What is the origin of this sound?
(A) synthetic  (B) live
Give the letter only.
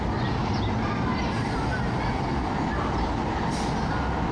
B